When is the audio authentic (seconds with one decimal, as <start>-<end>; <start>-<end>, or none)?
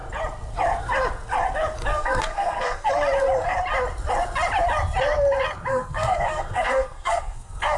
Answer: 0.0-1.9; 2.9-5.7